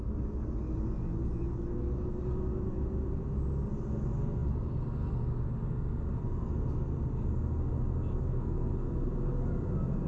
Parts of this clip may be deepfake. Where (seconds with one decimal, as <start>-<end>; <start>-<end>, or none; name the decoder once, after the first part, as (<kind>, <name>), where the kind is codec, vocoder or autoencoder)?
8.1-8.7 (codec, SNAC)